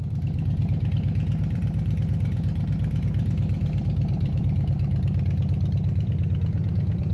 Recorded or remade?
remade